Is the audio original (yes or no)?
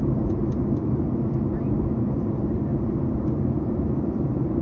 no